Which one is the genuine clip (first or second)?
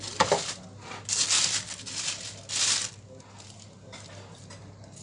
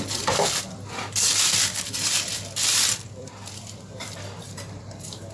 first